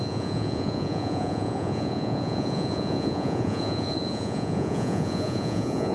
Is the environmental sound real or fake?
fake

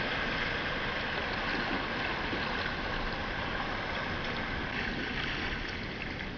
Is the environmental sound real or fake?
real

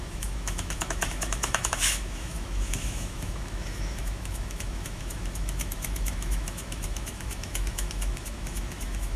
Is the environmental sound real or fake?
fake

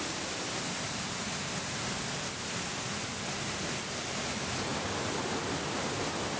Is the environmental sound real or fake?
real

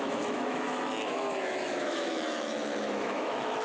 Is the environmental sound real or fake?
fake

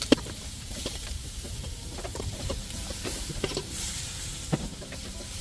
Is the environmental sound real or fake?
fake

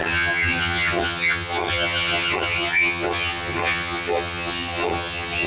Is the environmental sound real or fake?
fake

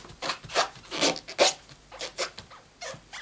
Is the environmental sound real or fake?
real